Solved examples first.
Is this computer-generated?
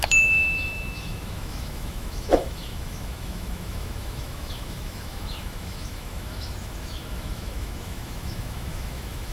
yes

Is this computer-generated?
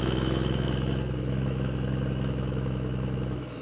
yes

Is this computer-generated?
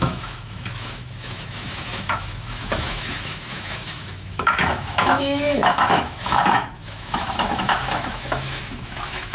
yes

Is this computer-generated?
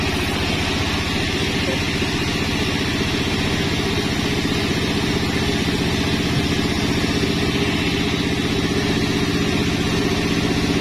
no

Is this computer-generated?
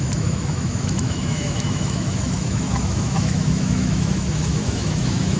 yes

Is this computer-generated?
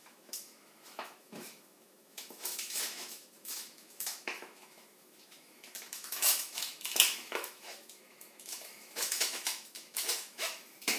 yes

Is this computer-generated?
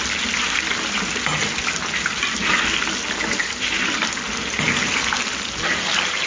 no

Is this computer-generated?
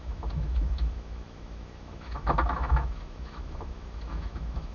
yes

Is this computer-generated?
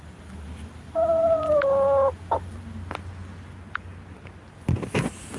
no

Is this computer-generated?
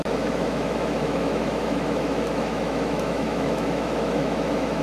yes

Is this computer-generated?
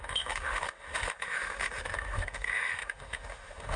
yes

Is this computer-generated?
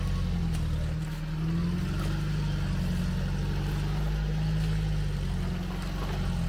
no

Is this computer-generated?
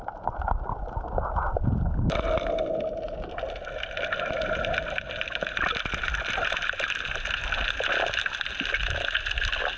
no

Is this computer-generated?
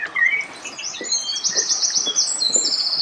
no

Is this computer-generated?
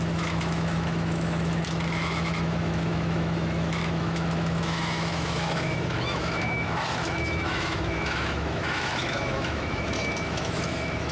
yes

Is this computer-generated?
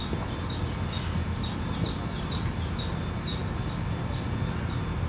no